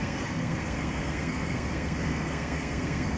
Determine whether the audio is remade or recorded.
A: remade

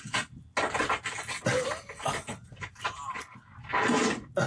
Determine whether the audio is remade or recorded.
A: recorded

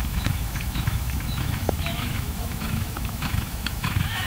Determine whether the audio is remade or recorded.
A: remade